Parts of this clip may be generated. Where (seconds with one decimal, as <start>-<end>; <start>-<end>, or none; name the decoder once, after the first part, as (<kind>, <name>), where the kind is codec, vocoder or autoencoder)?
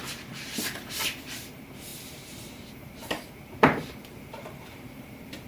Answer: 0.0-5.5 (vocoder, BigVGAN v2)